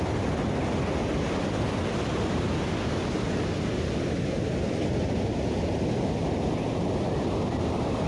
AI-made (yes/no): no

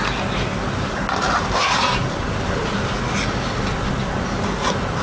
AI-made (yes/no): no